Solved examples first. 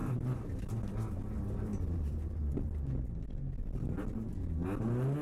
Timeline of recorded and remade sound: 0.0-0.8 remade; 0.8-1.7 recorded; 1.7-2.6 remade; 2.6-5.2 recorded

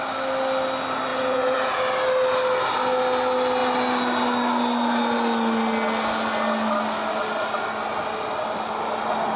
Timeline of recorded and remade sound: 0.0-1.1 recorded; 1.1-1.8 remade; 1.8-9.4 recorded

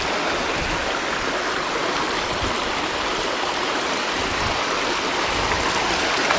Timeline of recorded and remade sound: 0.0-6.4 recorded

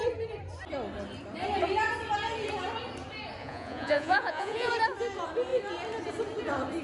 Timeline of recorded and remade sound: 0.0-3.4 recorded; 3.4-4.7 remade; 4.7-6.8 recorded

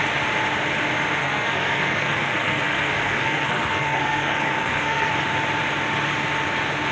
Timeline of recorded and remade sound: 0.0-1.2 recorded; 1.2-5.1 remade; 5.1-6.9 recorded